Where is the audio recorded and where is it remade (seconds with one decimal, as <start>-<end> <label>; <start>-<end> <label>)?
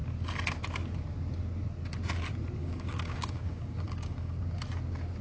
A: 0.0-2.6 recorded; 2.6-4.4 remade; 4.4-5.2 recorded